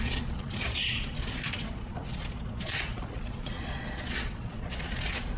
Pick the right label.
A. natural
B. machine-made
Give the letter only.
B